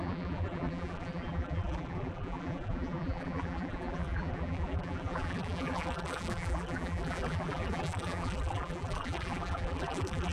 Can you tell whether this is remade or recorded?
remade